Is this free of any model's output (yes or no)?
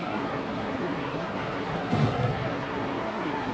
no